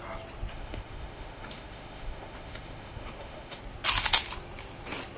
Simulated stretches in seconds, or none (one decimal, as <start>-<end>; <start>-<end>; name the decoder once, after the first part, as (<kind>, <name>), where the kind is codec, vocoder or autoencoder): 0.5-3.6 (autoencoder, DAC-VAE)